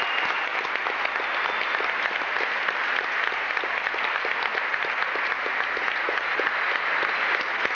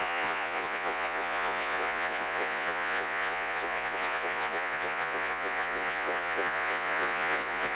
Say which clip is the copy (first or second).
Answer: second